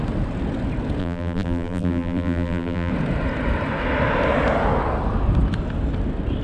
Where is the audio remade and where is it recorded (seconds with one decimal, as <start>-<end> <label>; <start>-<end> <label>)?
0.0-1.0 recorded; 1.0-2.9 remade; 2.9-6.4 recorded